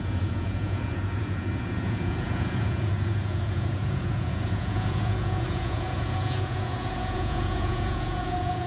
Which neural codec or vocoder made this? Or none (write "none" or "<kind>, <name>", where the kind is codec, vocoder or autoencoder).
vocoder, Vocos